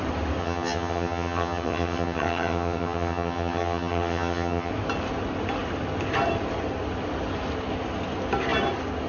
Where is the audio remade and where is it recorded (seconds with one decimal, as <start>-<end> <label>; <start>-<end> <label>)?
0.0-0.4 recorded; 0.4-4.7 remade; 4.7-9.1 recorded